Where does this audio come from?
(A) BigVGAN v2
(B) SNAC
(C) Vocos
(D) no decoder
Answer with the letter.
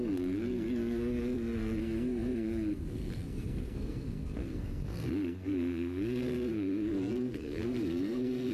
B